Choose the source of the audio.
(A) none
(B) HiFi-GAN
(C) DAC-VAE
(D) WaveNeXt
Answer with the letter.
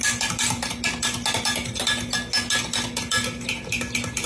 A